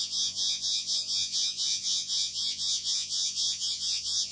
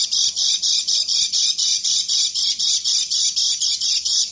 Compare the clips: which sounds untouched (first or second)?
second